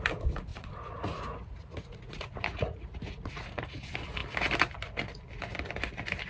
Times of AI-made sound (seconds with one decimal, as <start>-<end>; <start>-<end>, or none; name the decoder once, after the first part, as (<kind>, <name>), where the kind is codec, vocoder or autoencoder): 0.5-3.6 (vocoder, Vocos)